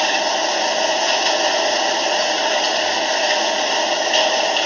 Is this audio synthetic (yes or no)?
no